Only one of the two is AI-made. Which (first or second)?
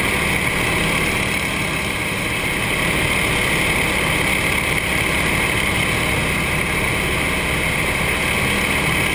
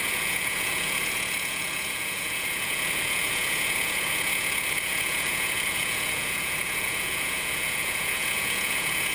second